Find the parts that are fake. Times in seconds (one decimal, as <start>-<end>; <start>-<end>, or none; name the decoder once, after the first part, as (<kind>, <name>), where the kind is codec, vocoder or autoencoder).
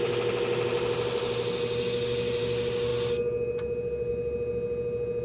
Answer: none